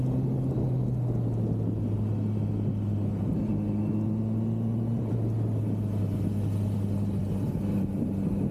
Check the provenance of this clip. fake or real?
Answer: real